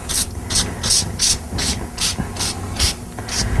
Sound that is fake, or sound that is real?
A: real